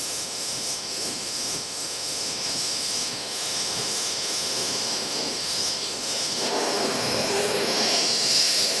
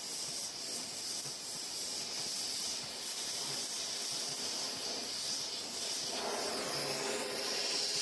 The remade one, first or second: first